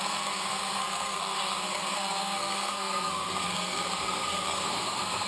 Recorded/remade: remade